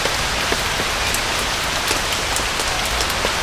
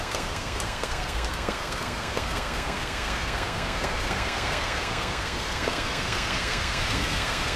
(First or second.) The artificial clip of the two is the second